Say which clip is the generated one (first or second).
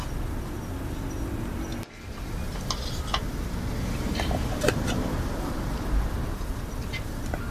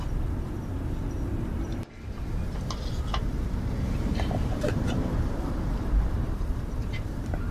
second